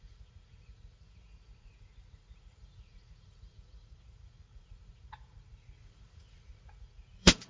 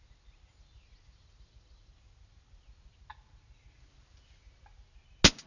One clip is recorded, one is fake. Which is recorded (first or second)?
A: second